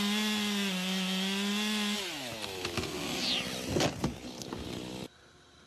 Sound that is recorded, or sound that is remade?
recorded